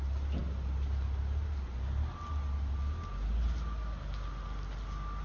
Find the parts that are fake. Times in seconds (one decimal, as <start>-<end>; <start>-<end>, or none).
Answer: none